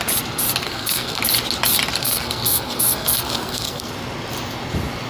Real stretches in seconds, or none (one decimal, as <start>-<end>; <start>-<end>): 0.0-0.6; 1.2-2.0; 3.9-5.1